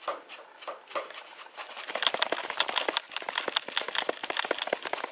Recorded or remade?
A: recorded